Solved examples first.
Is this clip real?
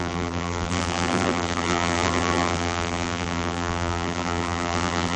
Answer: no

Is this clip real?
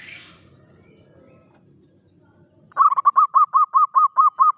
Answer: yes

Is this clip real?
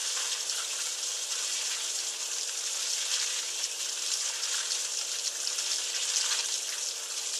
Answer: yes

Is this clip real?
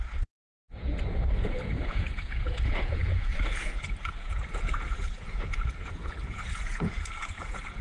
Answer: no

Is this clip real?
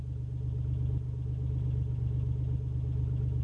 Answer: yes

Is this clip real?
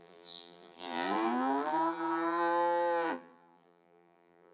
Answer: no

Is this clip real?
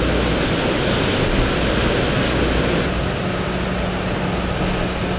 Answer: yes